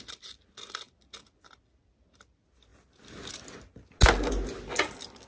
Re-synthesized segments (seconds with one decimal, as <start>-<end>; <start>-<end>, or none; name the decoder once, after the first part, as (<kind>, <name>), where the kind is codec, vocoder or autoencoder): none